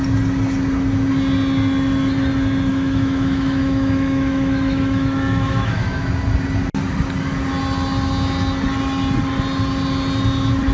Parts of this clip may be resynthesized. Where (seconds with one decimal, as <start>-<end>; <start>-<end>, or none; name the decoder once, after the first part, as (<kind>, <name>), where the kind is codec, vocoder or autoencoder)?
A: 2.7-5.9 (autoencoder, DAC-VAE)